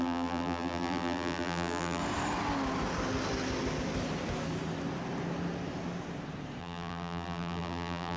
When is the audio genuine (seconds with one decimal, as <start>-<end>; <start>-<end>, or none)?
2.0-6.6